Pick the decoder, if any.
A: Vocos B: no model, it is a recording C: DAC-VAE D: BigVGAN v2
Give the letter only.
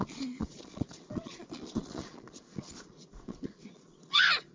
A